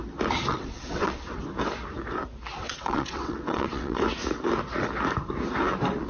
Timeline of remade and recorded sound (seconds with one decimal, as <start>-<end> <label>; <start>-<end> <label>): 0.0-0.5 recorded; 0.5-1.4 remade; 1.4-2.6 recorded; 2.6-4.0 remade; 4.0-6.1 recorded